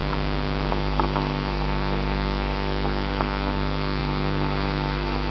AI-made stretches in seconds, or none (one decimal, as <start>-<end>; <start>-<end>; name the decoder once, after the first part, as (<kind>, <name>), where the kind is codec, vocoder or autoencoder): 0.7-5.3 (codec, SNAC)